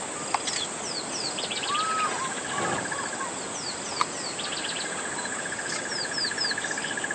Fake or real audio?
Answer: real